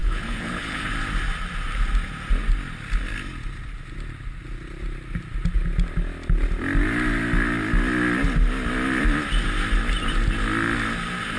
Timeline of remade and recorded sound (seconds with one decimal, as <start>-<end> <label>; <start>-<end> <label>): 0.0-0.9 remade; 0.9-11.4 recorded